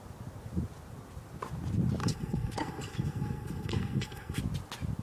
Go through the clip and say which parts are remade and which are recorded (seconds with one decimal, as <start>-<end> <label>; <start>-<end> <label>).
0.0-2.0 recorded; 2.0-4.4 remade; 4.4-5.0 recorded